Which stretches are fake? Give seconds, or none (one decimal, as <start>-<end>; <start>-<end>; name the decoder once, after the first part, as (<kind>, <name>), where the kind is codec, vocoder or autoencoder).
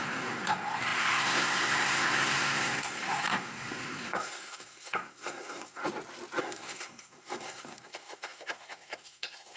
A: 0.0-5.8 (codec, SNAC); 6.4-9.6